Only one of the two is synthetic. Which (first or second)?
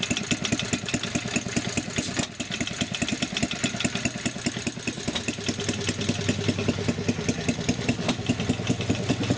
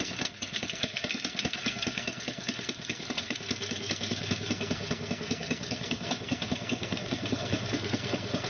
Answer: second